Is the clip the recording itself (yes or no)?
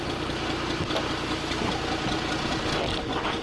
yes